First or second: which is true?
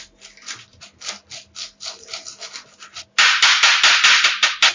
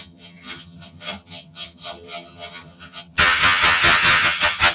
first